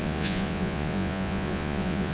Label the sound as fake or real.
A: fake